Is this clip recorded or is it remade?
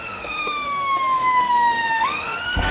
remade